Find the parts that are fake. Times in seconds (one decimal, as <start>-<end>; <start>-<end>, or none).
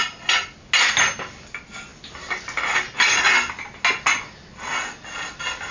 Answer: none